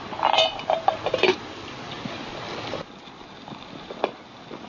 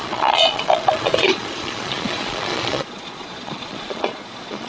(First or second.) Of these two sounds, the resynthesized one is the second